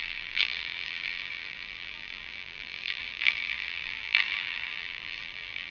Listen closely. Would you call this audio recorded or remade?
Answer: remade